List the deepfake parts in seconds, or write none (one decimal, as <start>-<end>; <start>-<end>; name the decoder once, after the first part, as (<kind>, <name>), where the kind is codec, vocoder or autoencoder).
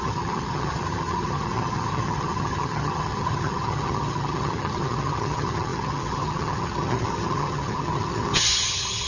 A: 0.0-9.1 (vocoder, HiFi-GAN)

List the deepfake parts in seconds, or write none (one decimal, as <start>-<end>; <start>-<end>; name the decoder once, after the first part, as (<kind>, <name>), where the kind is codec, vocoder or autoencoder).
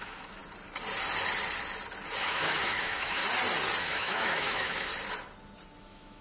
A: 0.0-0.4 (autoencoder, DAC-VAE); 2.2-3.2; 3.8-4.9; 5.8-6.2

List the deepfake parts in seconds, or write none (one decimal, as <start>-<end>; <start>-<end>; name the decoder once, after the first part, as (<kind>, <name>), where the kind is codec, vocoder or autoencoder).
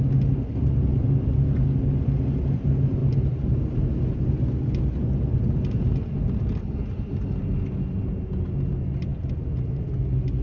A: none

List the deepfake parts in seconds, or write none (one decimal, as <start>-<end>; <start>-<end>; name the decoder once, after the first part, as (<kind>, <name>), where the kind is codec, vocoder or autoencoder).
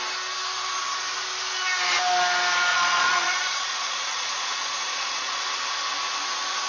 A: 2.7-5.4 (vocoder, Vocos)